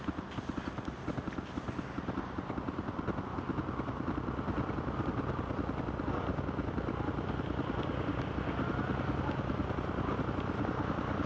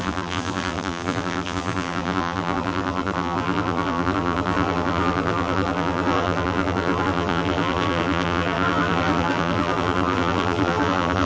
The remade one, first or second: second